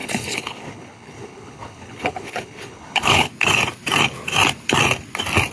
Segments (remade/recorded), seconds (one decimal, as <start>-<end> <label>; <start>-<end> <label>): 0.0-3.3 remade; 3.3-5.5 recorded